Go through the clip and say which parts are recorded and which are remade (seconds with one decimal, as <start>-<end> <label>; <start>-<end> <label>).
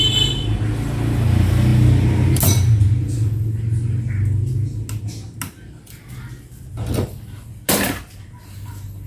0.0-9.1 recorded